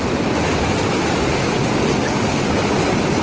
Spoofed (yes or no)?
no